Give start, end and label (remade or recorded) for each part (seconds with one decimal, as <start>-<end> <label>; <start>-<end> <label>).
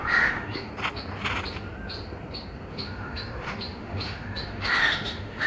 0.0-0.7 remade; 0.7-2.7 recorded; 2.7-5.5 remade